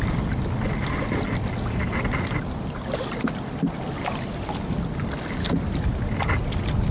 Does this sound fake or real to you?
real